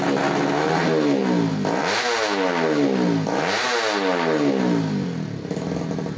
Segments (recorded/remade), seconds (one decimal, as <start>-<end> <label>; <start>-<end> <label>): 0.0-6.2 recorded